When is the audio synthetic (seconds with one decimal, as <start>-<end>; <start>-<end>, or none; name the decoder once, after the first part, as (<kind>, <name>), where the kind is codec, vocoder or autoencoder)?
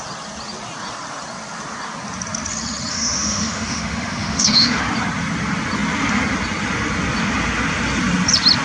2.9-4.8 (autoencoder, DAC-VAE)